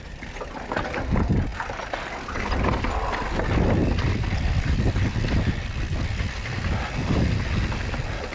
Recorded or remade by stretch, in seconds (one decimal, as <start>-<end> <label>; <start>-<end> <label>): 0.0-8.3 recorded